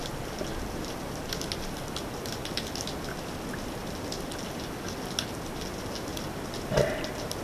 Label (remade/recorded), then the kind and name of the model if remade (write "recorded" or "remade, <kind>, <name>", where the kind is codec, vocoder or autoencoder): recorded